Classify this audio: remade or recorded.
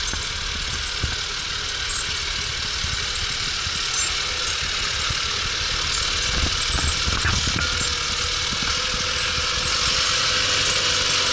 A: recorded